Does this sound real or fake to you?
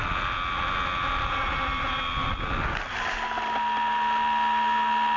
real